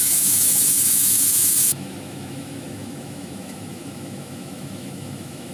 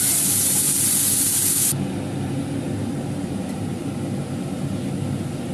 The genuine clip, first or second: second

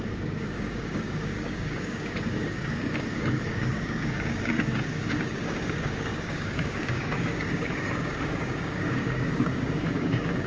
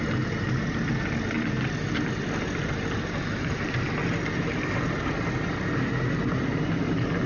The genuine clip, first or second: second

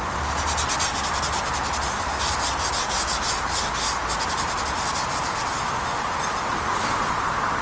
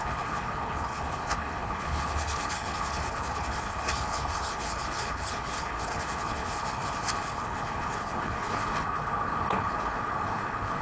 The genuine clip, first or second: first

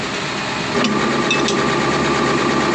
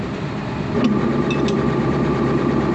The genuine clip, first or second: first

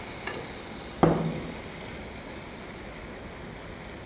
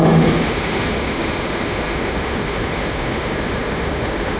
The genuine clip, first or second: first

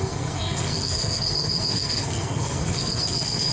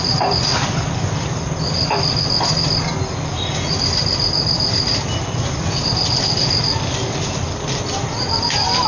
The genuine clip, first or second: second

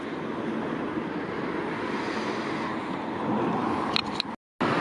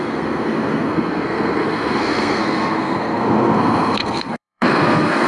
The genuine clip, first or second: first